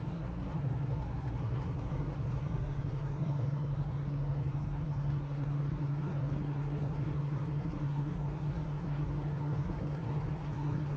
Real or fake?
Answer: fake